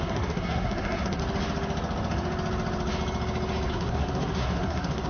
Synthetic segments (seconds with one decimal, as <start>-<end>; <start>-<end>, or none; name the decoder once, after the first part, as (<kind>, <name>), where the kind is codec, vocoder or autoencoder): 0.0-1.2 (codec, SNAC); 3.7-5.1